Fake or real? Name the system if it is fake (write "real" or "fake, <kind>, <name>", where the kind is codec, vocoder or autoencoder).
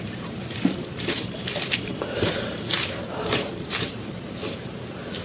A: fake, vocoder, BigVGAN v2